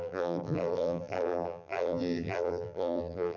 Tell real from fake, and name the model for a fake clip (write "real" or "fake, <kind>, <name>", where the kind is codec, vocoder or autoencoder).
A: fake, vocoder, BigVGAN v2